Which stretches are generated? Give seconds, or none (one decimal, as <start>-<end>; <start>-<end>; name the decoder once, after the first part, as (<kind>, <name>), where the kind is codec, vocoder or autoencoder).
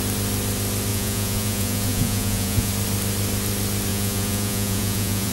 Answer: 0.9-2.7 (vocoder, Vocos); 3.9-5.3